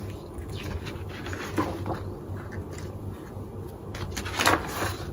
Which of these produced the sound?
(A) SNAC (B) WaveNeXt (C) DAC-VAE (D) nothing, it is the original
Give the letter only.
D